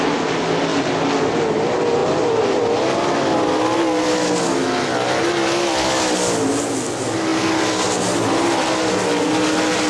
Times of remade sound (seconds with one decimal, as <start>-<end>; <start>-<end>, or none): none